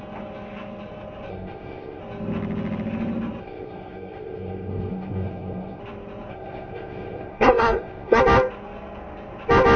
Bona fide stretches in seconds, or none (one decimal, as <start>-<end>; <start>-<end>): 0.0-1.3; 2.0-3.4; 5.8-6.3; 8.2-9.8